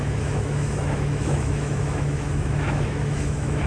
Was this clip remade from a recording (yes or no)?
yes